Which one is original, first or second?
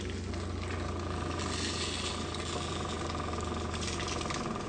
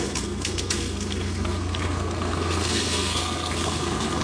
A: first